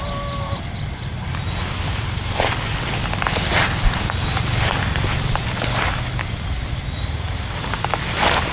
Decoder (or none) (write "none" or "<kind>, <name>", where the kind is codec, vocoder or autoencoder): none